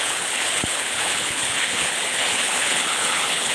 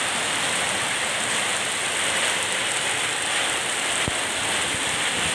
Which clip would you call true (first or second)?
second